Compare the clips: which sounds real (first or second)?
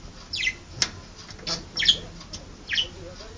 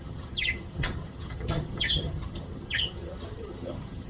first